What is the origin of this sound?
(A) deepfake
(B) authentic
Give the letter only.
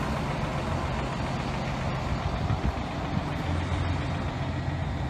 B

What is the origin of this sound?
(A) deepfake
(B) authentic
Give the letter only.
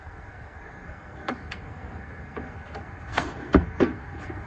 A